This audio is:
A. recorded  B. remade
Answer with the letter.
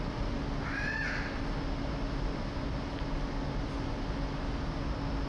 A